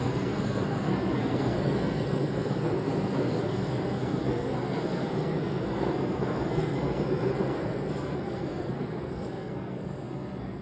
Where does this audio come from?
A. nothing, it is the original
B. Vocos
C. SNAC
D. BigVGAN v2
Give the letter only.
C